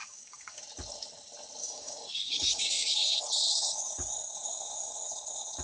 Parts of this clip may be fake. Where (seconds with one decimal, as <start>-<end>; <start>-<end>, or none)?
0.0-0.6; 1.6-3.2

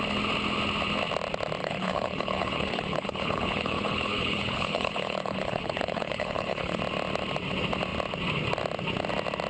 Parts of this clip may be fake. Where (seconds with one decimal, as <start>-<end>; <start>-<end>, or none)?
1.6-6.8

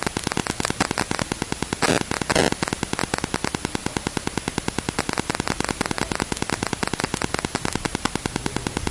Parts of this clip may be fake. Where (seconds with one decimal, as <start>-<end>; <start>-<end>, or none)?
none

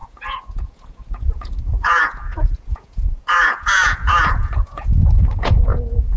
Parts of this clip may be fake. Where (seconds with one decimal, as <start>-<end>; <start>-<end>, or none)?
0.0-6.2

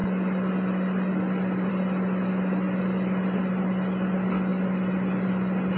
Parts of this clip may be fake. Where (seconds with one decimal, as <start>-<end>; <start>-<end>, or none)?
none